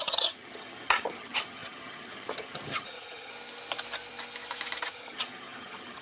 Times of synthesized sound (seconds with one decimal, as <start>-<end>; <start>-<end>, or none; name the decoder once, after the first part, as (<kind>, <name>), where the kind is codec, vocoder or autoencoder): 0.0-3.3 (vocoder, HiFi-GAN); 4.8-6.0